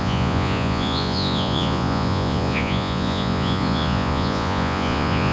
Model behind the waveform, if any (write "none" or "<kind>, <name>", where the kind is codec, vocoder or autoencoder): vocoder, Vocos